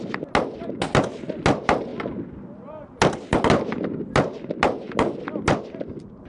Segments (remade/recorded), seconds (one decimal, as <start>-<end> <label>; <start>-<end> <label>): 0.0-6.3 recorded